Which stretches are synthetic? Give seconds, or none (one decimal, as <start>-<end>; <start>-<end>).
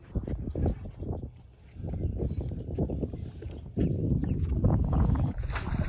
4.2-5.5